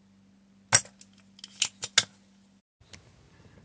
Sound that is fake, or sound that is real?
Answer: real